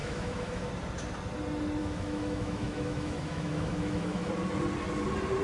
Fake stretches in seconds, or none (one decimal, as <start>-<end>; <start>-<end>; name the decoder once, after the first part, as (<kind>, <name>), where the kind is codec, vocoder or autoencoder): 0.0-0.7 (autoencoder, DAC-VAE); 1.8-4.3